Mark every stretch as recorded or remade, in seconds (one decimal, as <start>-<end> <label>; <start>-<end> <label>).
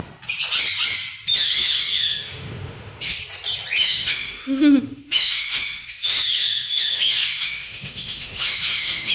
0.0-1.4 recorded; 1.4-3.2 remade; 3.2-3.8 recorded; 3.8-9.1 remade